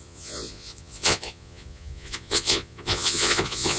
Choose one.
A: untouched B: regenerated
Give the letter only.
B